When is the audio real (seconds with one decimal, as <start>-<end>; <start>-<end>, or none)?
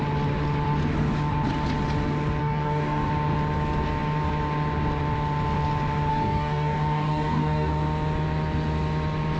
0.0-2.4; 3.1-6.1; 7.7-9.4